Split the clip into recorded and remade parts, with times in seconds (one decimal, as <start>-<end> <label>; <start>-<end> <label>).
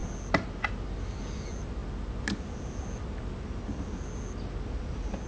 0.0-5.3 recorded